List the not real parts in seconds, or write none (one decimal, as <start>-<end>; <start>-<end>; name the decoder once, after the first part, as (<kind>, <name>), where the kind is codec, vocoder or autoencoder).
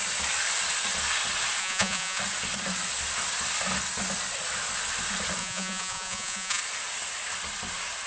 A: 1.6-2.2 (vocoder, Vocos); 5.4-6.6